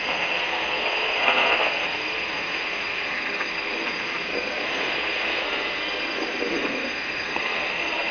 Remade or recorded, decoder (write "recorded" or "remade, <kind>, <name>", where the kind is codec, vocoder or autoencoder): remade, codec, SNAC